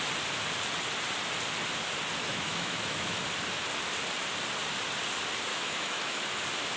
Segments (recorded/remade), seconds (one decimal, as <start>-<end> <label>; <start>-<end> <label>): 0.0-2.2 recorded; 2.2-3.2 remade; 3.2-5.5 recorded; 5.5-6.3 remade; 6.3-6.8 recorded